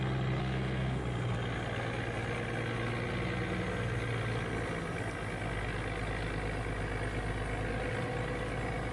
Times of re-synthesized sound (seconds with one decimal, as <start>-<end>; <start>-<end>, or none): 0.4-1.0